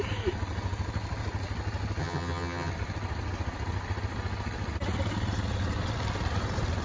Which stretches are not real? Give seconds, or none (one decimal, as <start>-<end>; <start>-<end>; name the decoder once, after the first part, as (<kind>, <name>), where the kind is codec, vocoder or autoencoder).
2.0-2.7 (vocoder, HiFi-GAN)